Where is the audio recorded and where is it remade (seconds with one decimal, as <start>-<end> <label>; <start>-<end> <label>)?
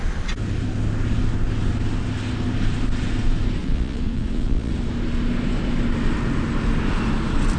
0.0-3.6 recorded; 3.6-4.7 remade; 4.7-7.6 recorded